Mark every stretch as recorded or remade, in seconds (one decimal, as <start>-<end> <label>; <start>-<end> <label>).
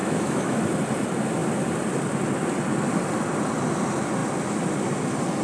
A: 0.0-0.6 remade; 0.6-5.4 recorded